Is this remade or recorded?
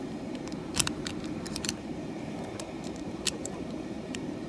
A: remade